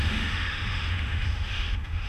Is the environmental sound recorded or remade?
remade